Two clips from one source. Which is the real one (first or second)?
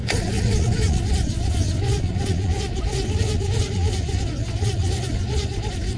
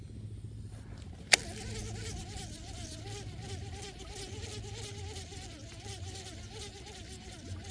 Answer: second